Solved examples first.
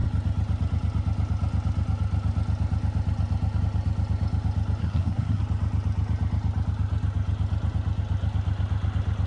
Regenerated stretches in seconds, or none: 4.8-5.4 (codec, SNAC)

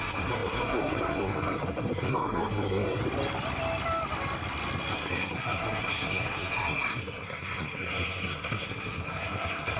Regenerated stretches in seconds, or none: 0.0-3.0 (codec, SNAC); 4.9-9.8

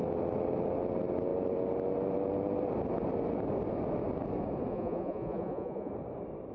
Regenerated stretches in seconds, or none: 4.7-5.9 (vocoder, Vocos)